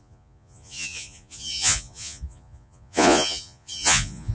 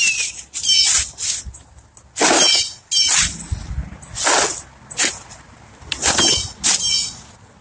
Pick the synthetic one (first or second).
first